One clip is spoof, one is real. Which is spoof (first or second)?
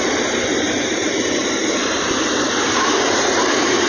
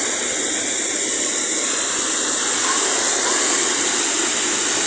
first